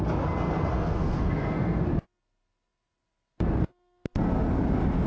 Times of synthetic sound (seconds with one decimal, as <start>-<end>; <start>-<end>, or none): 0.7-1.8